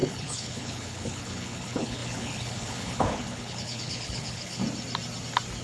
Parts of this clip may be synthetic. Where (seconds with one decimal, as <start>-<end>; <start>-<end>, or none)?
0.0-4.6